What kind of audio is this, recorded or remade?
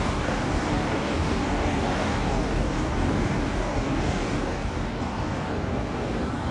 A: remade